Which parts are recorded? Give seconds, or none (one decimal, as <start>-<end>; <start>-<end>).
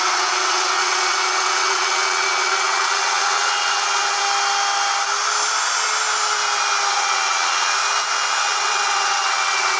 4.2-6.9; 7.8-8.4